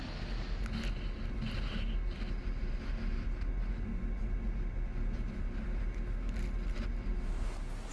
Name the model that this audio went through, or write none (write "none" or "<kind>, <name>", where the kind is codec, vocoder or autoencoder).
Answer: none